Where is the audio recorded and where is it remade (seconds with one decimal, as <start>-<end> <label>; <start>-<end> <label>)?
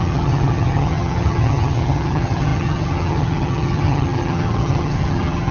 0.0-5.5 remade